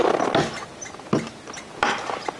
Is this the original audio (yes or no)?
yes